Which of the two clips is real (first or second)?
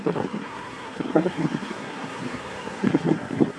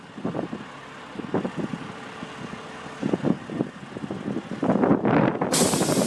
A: second